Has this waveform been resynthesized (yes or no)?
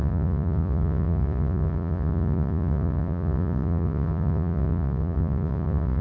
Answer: yes